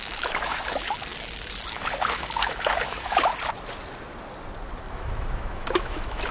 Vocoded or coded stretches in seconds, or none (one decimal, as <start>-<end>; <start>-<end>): 0.0-3.3; 4.9-6.3